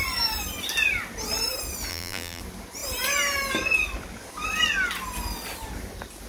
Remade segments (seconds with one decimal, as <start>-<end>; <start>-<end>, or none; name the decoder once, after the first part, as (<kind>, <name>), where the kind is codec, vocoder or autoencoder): 1.9-2.4 (vocoder, BigVGAN v2)

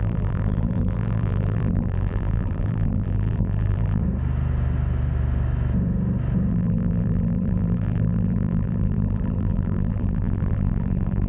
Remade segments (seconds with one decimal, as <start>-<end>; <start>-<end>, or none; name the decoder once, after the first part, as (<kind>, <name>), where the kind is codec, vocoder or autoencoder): 0.0-4.0 (vocoder, BigVGAN v2); 6.5-11.3